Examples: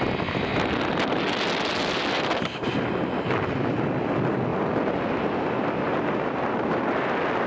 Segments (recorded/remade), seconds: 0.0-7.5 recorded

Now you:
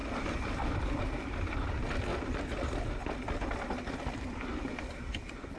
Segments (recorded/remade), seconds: 0.0-1.0 remade; 1.0-5.6 recorded

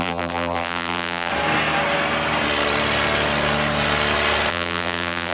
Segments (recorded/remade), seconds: 0.0-1.3 remade; 1.3-4.5 recorded; 4.5-5.3 remade

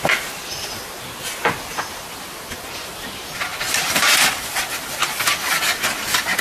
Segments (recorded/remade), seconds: 0.0-6.4 recorded

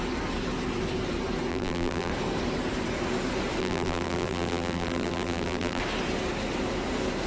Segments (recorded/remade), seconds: 0.0-1.5 recorded; 1.5-2.1 remade; 2.1-3.6 recorded; 3.6-5.8 remade; 5.8-7.3 recorded

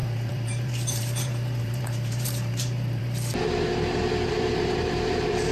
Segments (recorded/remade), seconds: 0.0-3.0 remade; 3.0-4.3 recorded; 4.3-5.5 remade

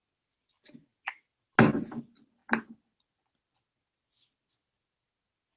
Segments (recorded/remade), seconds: 0.0-5.6 recorded

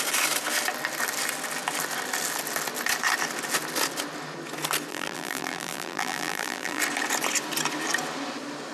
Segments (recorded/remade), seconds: 0.0-4.9 recorded; 4.9-6.8 remade; 6.8-8.7 recorded